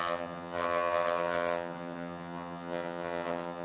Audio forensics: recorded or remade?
remade